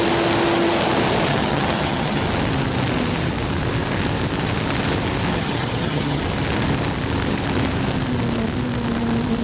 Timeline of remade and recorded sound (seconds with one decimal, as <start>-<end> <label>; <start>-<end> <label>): 0.0-1.3 recorded; 1.3-2.2 remade; 2.2-5.3 recorded; 5.3-6.2 remade; 6.2-9.4 recorded

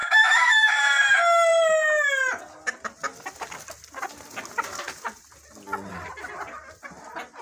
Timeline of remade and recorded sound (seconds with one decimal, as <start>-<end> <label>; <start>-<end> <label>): 0.0-0.8 remade; 0.8-7.4 recorded

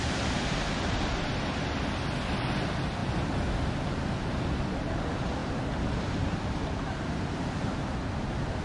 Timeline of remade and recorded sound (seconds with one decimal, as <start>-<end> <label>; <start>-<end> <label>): 0.0-8.6 recorded

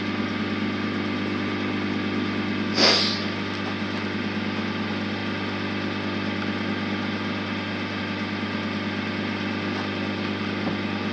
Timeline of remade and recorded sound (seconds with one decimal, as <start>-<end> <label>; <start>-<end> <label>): 0.0-11.1 recorded

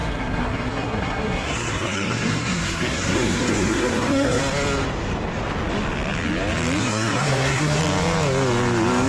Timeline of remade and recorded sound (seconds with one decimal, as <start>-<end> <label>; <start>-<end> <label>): 0.0-4.4 remade; 4.4-6.8 recorded; 6.8-7.8 remade; 7.8-9.1 recorded

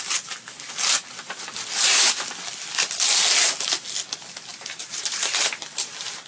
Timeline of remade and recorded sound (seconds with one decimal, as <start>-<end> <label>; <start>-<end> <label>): 0.0-4.5 recorded; 4.5-5.6 remade; 5.6-6.3 recorded